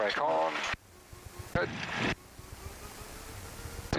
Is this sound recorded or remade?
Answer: recorded